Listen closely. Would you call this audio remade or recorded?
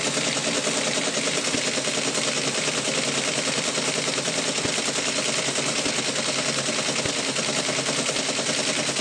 recorded